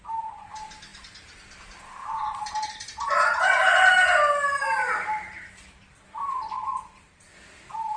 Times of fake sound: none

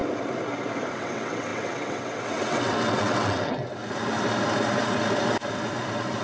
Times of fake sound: 0.9-3.8

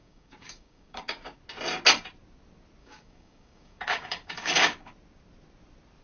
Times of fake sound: 0.0-1.4; 2.8-4.9

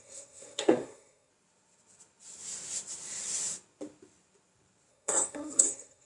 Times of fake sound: 0.0-1.3; 4.9-6.1

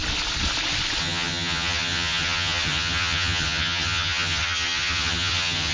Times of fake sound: 1.0-5.7

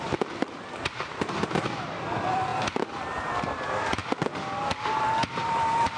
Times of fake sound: 0.0-2.5; 3.4-4.0; 4.7-6.0

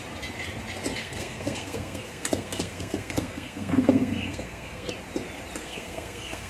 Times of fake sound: 1.0-4.9; 5.6-6.5